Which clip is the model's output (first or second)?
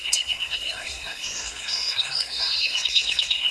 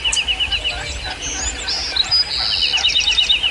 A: first